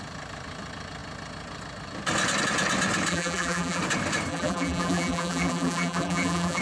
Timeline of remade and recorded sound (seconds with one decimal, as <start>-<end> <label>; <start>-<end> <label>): 0.0-3.1 recorded; 3.1-3.8 remade; 3.8-4.3 recorded; 4.3-6.6 remade